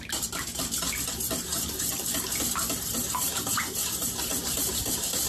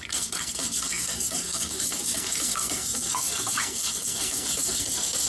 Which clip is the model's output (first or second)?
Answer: second